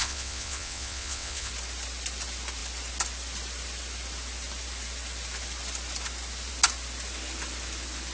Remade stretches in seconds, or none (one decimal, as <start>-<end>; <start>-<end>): 0.0-1.5